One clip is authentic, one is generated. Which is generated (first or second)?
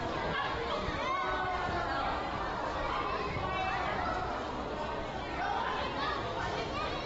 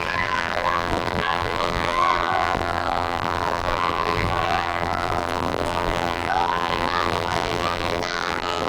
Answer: second